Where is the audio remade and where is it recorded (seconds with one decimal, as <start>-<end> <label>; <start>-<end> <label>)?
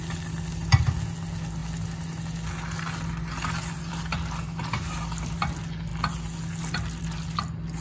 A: 0.0-7.8 recorded